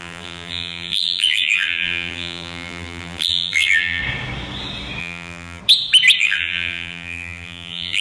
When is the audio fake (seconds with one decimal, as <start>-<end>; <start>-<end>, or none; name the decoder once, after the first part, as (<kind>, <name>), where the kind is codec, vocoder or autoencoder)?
0.0-4.0 (vocoder, BigVGAN v2); 5.0-5.6; 6.2-8.0